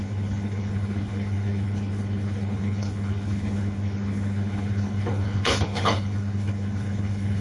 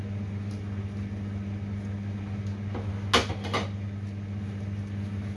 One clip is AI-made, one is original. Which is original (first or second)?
second